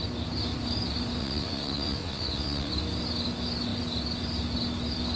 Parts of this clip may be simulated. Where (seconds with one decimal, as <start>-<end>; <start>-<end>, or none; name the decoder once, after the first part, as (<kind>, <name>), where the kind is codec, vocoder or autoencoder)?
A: 1.2-2.7 (vocoder, WaveNeXt)